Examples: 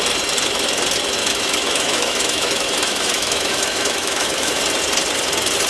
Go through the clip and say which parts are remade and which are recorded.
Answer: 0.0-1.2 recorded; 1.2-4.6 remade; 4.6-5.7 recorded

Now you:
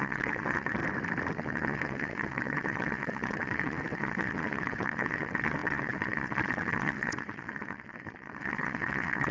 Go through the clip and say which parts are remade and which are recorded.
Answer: 0.0-0.8 remade; 0.8-1.3 recorded; 1.3-9.3 remade